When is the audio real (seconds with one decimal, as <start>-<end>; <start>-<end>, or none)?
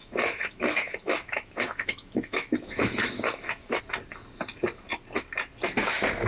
3.8-6.3